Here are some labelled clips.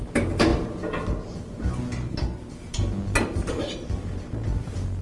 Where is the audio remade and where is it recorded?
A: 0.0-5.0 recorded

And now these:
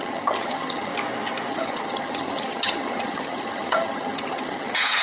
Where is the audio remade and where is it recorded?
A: 0.0-0.9 remade; 0.9-1.5 recorded; 1.5-5.0 remade

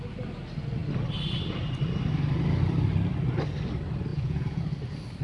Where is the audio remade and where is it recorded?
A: 0.0-4.1 recorded; 4.1-4.6 remade; 4.6-5.2 recorded